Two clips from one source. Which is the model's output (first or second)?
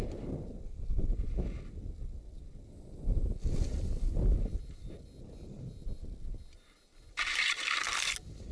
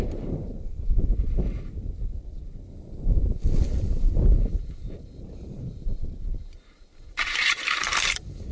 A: second